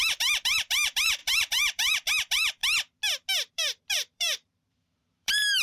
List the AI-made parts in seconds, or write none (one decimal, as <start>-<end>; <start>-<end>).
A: 0.0-2.6; 3.5-5.6